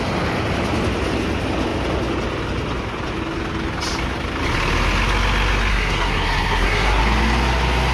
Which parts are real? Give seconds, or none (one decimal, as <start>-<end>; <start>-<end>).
0.0-5.7; 7.0-7.9